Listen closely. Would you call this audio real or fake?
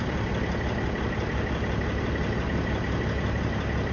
real